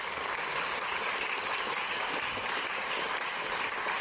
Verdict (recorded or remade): recorded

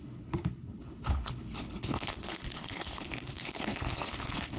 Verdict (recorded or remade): remade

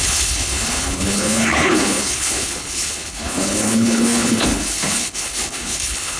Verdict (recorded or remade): remade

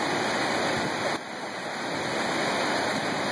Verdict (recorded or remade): recorded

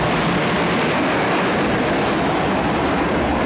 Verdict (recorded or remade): recorded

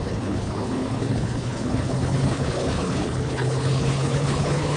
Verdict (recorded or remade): remade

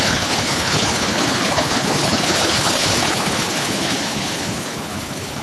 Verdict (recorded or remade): remade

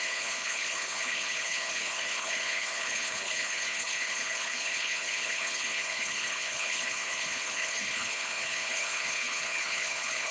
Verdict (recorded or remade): remade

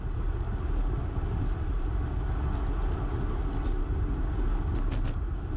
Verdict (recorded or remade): recorded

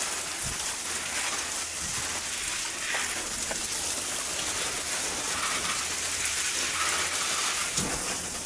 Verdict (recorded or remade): recorded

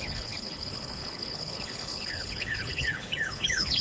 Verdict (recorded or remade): remade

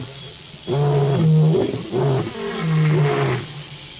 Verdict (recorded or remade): recorded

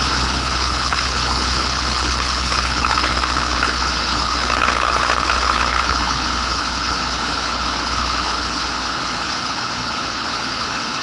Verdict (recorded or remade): remade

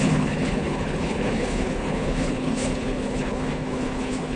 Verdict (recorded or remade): remade